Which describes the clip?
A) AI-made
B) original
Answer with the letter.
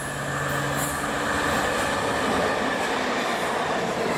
B